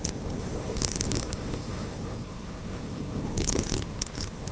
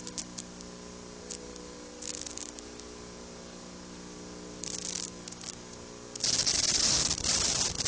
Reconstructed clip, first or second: first